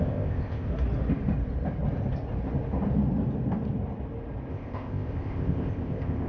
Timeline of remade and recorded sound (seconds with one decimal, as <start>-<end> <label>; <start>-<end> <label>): 0.0-0.7 remade; 0.7-4.5 recorded; 4.5-6.3 remade